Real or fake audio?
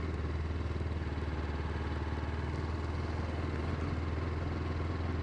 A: real